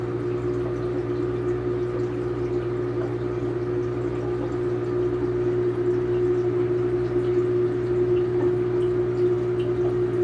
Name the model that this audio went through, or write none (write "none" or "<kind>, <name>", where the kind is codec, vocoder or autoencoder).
none